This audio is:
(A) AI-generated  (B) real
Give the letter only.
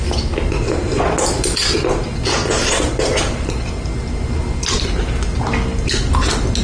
B